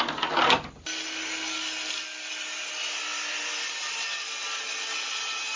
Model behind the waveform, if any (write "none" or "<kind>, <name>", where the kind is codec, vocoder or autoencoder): none